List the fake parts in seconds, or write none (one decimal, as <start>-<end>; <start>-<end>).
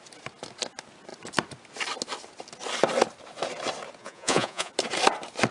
4.0-4.7